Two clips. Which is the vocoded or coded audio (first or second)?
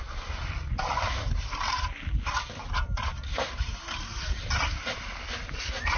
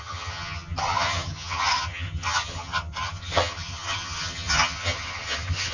second